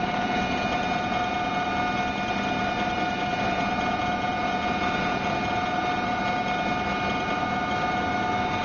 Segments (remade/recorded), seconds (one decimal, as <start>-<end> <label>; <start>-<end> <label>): 0.0-1.7 remade; 1.7-3.4 recorded; 3.4-6.2 remade; 6.2-8.6 recorded